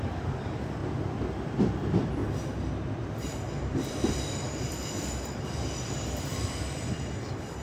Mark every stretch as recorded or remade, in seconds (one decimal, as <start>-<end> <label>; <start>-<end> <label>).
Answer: 0.0-0.8 remade; 0.8-1.5 recorded; 1.5-2.2 remade; 2.2-3.6 recorded; 3.6-7.6 remade